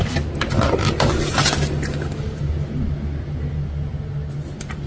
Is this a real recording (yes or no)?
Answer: yes